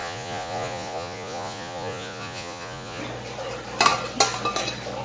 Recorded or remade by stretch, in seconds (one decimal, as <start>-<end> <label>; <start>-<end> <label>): 0.0-3.0 remade; 3.0-5.0 recorded